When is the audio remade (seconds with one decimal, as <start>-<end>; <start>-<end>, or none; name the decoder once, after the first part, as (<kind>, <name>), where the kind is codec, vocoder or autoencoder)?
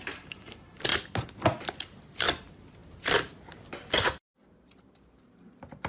0.0-0.9 (vocoder, BigVGAN v2); 1.6-5.9